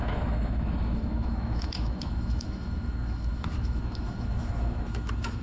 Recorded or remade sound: remade